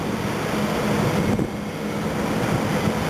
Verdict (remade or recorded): remade